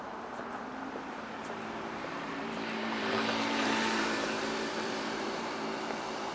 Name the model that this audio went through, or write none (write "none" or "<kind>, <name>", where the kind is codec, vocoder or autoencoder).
vocoder, BigVGAN v2